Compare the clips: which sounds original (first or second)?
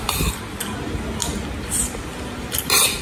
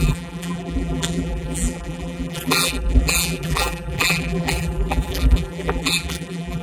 first